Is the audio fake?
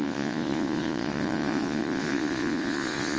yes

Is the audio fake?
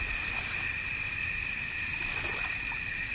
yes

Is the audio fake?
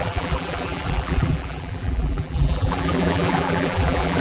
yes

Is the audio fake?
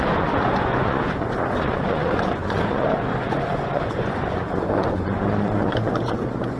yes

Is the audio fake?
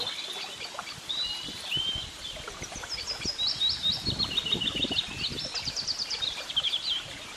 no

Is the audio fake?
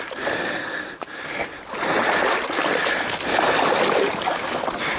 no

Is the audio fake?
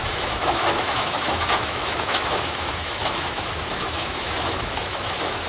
yes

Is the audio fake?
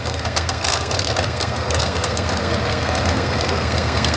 yes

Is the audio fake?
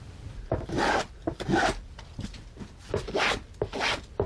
no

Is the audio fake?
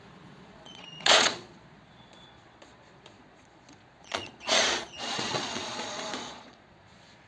yes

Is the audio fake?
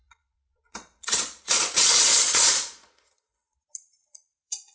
yes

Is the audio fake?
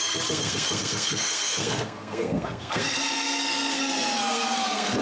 yes